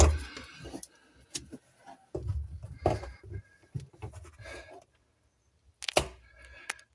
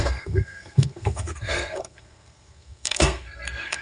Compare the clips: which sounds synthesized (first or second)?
second